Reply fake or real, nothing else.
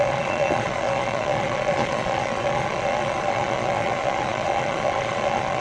fake